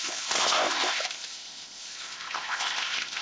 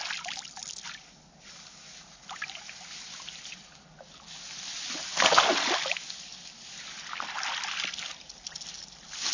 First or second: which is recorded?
second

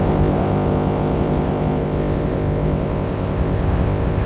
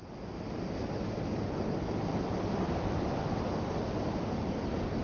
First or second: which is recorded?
second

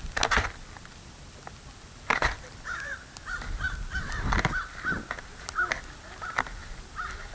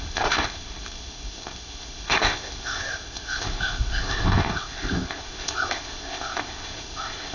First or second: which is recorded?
first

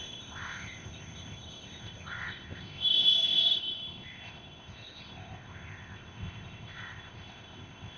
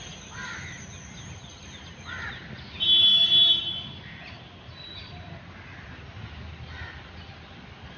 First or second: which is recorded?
second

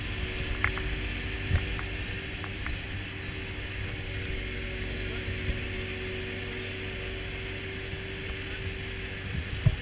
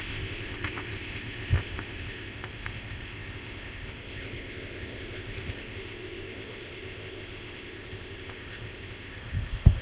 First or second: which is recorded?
first